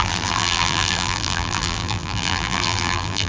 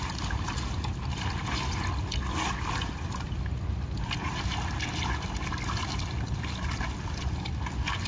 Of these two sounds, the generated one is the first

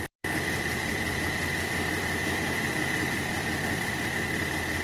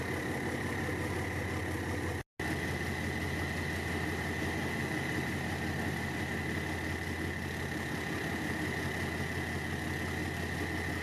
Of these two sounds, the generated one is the first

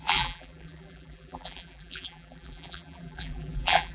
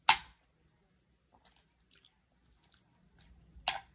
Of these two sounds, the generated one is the first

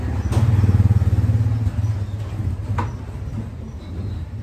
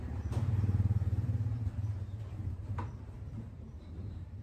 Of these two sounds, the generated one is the second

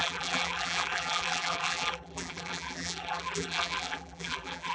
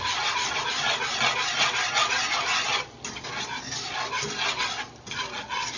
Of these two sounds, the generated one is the first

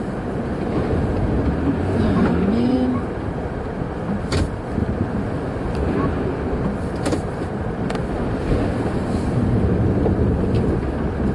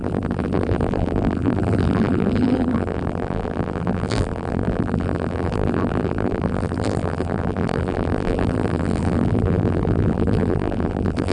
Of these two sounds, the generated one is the second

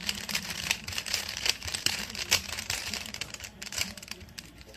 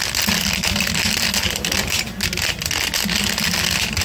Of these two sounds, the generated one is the first